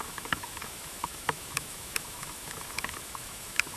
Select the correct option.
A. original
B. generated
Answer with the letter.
B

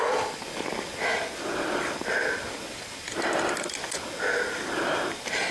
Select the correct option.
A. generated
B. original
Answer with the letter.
B